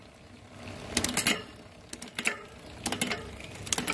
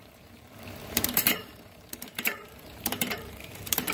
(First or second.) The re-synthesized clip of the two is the second